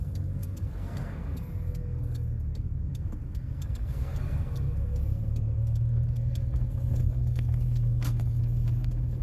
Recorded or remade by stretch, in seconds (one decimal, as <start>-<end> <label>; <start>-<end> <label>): 0.0-9.2 remade